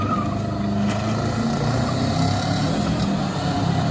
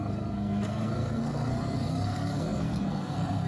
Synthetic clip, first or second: second